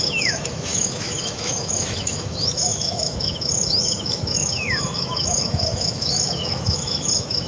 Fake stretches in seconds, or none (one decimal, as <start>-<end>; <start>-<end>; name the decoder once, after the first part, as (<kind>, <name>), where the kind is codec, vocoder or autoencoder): 0.0-7.5 (autoencoder, DAC-VAE)